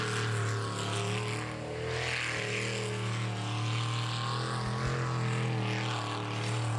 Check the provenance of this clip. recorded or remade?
recorded